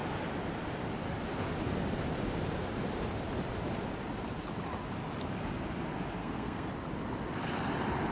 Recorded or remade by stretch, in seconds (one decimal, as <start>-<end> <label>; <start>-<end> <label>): 0.0-6.2 recorded; 6.2-6.7 remade; 6.7-8.1 recorded